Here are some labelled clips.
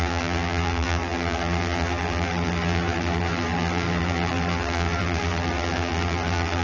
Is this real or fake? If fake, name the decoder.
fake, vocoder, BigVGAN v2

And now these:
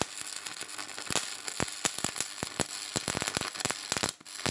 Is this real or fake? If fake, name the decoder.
real